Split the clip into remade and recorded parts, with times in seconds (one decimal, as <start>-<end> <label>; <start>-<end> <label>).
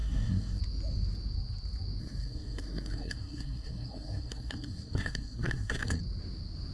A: 0.0-0.6 remade; 0.6-2.0 recorded; 2.0-6.0 remade; 6.0-6.7 recorded